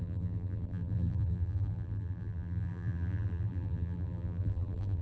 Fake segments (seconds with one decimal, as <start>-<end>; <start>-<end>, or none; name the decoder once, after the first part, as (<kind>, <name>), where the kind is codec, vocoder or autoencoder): 0.0-5.0 (vocoder, BigVGAN v2)